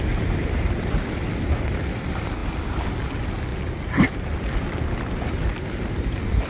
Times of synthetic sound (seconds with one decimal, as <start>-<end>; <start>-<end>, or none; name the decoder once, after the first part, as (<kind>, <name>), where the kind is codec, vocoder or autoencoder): 2.4-2.9 (vocoder, BigVGAN v2); 3.5-4.9